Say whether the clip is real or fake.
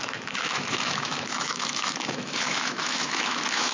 fake